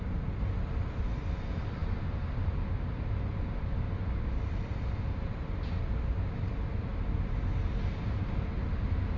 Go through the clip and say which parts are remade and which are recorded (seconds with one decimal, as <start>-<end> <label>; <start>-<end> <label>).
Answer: 0.0-9.2 recorded